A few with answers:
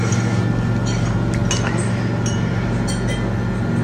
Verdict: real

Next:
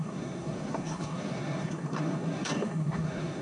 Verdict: fake